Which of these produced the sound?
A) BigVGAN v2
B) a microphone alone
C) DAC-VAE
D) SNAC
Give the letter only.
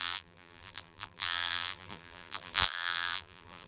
A